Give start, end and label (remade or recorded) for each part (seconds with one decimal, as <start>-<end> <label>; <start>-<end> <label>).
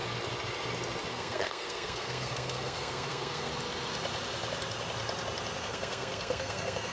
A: 0.0-1.1 recorded; 1.1-3.5 remade; 3.5-5.6 recorded; 5.6-6.9 remade